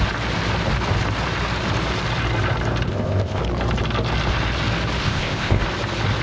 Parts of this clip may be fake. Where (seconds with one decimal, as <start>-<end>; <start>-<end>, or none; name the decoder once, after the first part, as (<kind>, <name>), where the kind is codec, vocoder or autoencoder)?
2.9-3.4 (codec, ZipCodec); 5.0-5.6